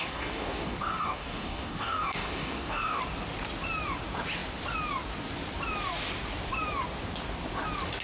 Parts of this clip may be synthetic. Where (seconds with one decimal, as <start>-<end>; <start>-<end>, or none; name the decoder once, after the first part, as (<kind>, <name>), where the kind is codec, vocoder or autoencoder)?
0.0-3.0 (codec, DAC)